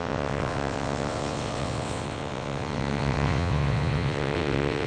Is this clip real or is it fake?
fake